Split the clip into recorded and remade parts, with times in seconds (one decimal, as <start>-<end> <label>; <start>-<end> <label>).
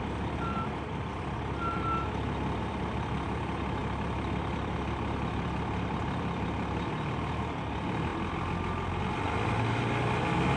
0.0-8.1 remade; 8.1-9.0 recorded; 9.0-10.6 remade